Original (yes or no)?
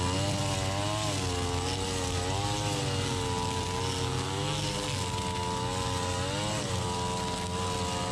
yes